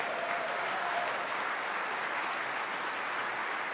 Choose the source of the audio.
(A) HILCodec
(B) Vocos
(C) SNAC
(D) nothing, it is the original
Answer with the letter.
D